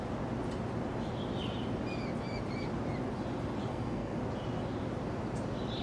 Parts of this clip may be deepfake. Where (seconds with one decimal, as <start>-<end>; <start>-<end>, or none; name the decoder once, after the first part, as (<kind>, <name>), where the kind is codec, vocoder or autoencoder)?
3.7-4.2 (codec, SNAC)